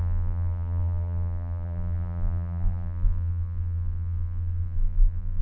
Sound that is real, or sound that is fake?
fake